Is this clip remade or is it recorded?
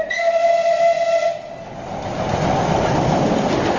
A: recorded